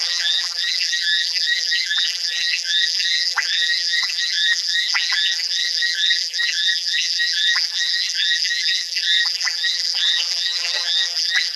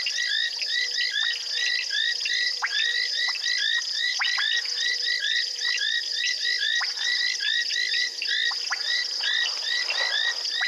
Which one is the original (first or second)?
second